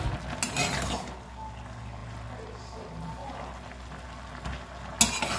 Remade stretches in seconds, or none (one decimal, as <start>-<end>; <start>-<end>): none